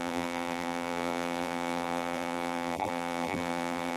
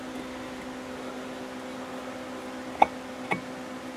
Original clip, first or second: second